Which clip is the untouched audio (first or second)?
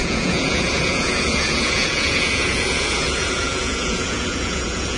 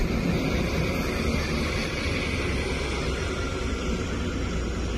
second